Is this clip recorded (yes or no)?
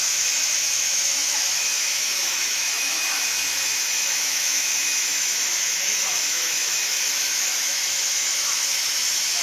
no